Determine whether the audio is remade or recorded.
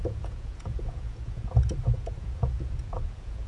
remade